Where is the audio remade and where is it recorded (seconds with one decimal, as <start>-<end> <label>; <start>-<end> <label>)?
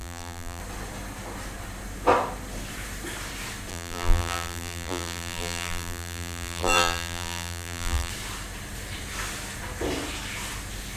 0.0-0.6 remade; 0.6-3.7 recorded; 3.7-8.1 remade; 8.1-11.0 recorded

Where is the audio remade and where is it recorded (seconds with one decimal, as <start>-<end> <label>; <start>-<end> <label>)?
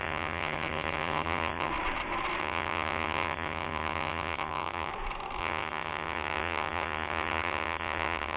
0.0-1.7 remade; 1.7-2.4 recorded; 2.4-4.9 remade; 4.9-5.4 recorded; 5.4-8.4 remade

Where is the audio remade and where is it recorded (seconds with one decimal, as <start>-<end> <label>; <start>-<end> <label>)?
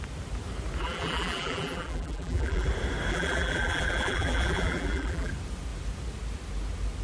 0.0-0.8 recorded; 0.8-2.7 remade; 2.7-3.1 recorded; 3.1-5.3 remade; 5.3-7.0 recorded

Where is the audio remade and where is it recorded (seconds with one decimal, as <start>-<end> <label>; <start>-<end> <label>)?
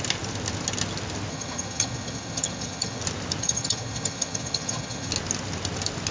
0.0-1.3 recorded; 1.3-3.0 remade; 3.0-3.4 recorded; 3.4-5.1 remade; 5.1-6.1 recorded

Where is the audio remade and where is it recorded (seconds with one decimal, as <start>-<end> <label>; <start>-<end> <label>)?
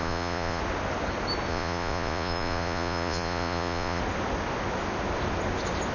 0.0-0.6 remade; 0.6-1.5 recorded; 1.5-4.0 remade; 4.0-5.9 recorded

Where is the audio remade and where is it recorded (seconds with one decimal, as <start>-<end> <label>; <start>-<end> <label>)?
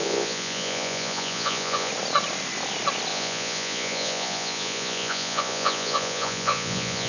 0.0-1.9 remade; 1.9-3.1 recorded; 3.1-7.1 remade